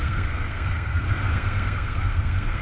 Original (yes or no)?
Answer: no